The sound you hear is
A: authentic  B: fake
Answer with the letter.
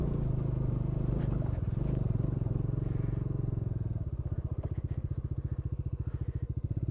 A